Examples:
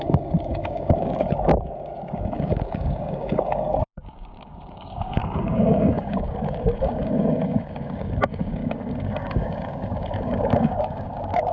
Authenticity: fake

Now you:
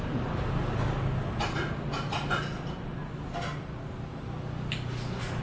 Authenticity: real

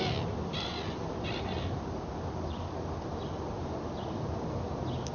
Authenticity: real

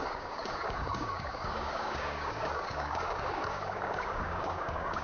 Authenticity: fake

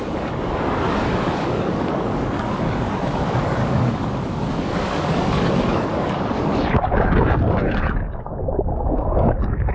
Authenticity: fake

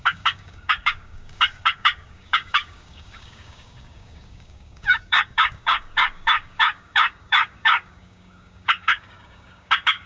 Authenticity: fake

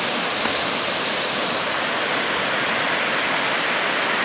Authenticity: real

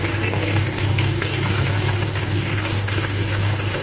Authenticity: fake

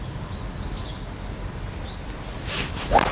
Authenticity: real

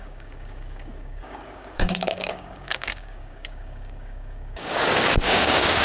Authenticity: fake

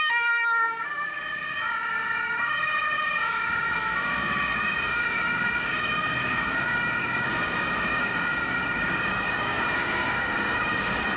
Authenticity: fake